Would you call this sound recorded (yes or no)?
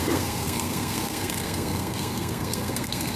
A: no